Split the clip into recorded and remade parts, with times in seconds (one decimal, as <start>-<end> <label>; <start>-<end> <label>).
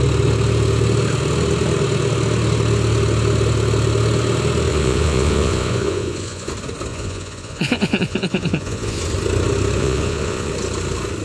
0.0-4.7 recorded; 4.7-6.5 remade; 6.5-6.9 recorded; 6.9-9.0 remade; 9.0-9.8 recorded; 9.8-10.5 remade; 10.5-11.2 recorded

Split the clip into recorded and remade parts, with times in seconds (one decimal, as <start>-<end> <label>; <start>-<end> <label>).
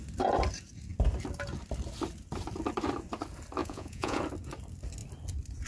0.0-3.6 recorded; 3.6-4.2 remade; 4.2-5.7 recorded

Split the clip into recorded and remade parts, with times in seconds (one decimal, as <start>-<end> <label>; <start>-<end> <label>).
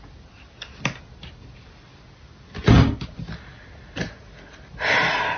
0.0-5.4 recorded